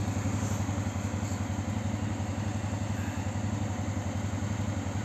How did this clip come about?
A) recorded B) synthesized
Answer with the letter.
A